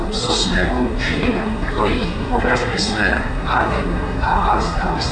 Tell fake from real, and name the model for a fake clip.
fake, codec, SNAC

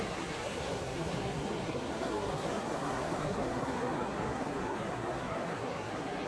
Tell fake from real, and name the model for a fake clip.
fake, codec, SNAC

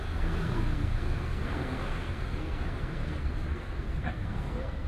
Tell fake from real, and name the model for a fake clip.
fake, codec, SNAC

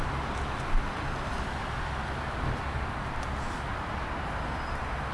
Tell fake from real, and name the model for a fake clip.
real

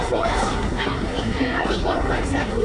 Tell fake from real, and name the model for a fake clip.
fake, codec, SNAC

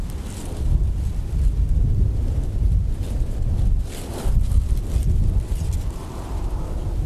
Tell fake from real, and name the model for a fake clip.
real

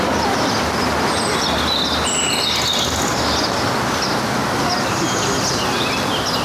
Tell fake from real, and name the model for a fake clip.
real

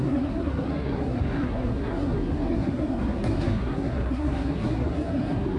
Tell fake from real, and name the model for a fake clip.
fake, codec, SNAC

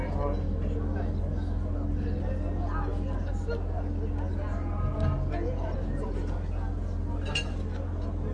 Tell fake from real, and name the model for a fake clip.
real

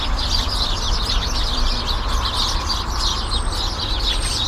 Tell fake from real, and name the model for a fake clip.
real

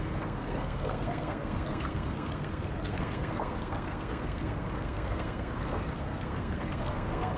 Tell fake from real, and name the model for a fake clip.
fake, codec, SNAC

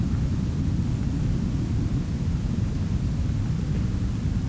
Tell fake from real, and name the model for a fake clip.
real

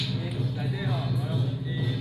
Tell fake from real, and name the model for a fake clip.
real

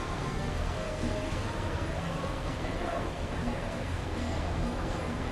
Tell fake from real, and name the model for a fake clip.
fake, codec, SNAC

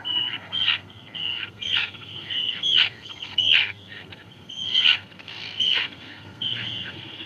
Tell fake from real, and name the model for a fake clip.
fake, codec, SNAC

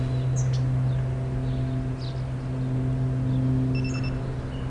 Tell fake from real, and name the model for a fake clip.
real